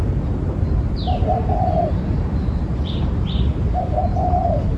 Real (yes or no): no